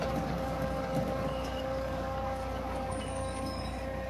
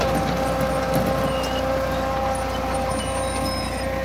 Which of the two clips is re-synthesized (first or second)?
first